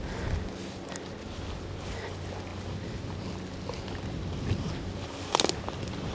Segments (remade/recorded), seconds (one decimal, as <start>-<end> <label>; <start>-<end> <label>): 0.0-6.1 recorded